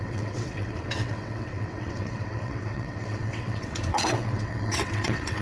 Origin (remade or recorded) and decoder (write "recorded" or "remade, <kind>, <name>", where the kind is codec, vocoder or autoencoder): remade, vocoder, WaveNeXt